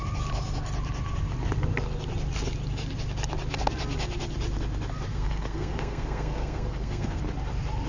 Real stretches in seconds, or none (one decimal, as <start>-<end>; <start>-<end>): 0.0-5.1; 7.2-7.9